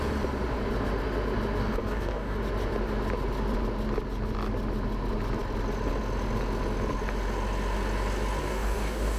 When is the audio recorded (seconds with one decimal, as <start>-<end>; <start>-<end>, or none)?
0.0-1.6; 2.4-8.4

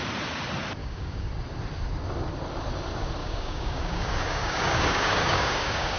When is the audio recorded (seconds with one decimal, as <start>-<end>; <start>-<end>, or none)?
0.0-0.8; 1.3-3.2

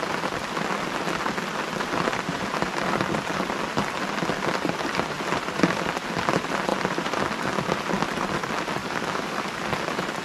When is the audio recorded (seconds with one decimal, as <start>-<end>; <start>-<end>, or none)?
0.0-8.8; 9.6-10.2

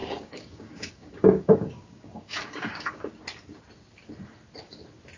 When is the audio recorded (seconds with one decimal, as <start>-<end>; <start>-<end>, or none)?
3.1-5.2

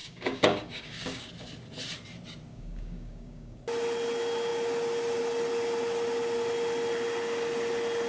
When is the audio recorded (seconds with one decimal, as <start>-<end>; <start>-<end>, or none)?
1.3-2.5; 3.6-8.1

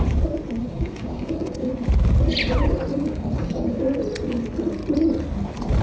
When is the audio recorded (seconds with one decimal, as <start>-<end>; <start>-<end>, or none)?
0.0-0.6; 1.7-2.9; 3.8-5.8

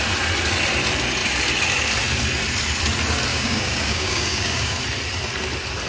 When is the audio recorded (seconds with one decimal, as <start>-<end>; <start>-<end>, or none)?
0.0-3.3; 4.8-5.9

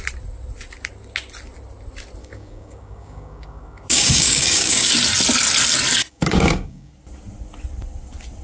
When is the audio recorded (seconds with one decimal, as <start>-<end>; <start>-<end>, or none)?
0.0-2.2; 4.9-6.0; 6.9-8.4